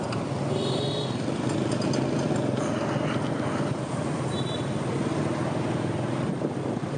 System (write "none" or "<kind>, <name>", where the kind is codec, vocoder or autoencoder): none